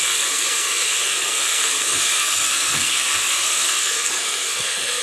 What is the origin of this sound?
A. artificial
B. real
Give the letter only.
A